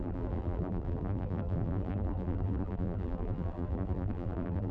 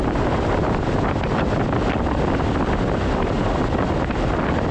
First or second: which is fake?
first